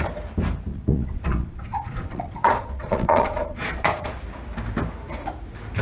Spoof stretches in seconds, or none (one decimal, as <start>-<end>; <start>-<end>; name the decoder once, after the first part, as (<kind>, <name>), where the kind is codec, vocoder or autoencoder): 0.7-4.2 (vocoder, Vocos)